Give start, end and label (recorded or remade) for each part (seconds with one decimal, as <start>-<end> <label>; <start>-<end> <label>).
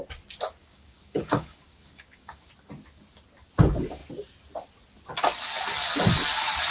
0.0-0.6 recorded; 0.6-2.5 remade; 2.5-6.7 recorded